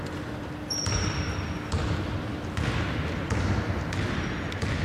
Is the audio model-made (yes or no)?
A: no